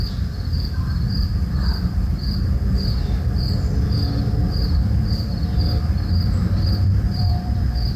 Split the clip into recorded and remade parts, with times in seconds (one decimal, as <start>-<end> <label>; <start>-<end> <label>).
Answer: 0.0-1.3 remade; 1.3-6.1 recorded; 6.1-8.0 remade